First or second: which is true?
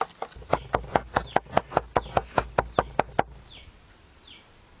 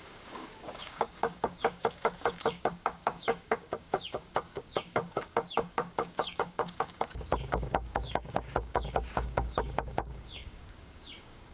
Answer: first